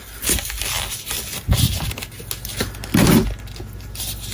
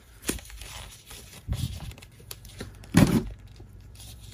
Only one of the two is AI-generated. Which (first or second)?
second